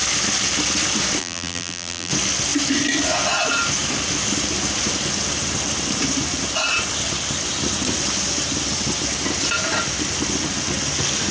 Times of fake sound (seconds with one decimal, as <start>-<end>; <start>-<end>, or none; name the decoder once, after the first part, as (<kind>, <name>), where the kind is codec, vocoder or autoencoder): 1.2-2.1 (vocoder, BigVGAN v2)